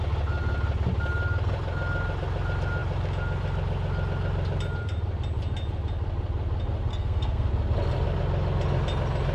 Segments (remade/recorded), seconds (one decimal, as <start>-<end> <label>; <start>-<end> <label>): 0.0-6.9 recorded; 6.9-7.5 remade; 7.5-9.3 recorded